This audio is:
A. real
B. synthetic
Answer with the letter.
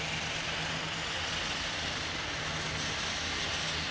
A